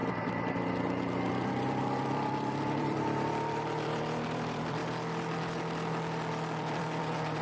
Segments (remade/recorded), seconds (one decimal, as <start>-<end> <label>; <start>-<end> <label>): 0.0-4.8 remade; 4.8-6.6 recorded; 6.6-7.4 remade